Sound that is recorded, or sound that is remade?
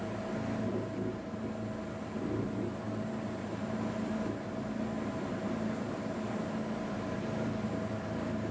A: recorded